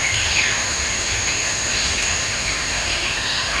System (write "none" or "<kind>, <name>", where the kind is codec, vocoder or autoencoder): autoencoder, DAC-VAE